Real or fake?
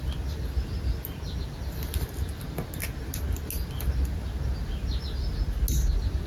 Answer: real